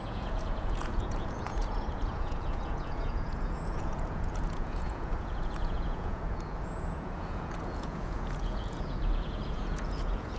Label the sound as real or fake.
fake